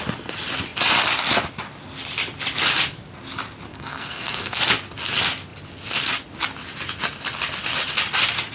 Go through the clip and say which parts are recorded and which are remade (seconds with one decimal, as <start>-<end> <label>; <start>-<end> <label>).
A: 0.0-3.7 recorded; 3.7-4.6 remade; 4.6-8.5 recorded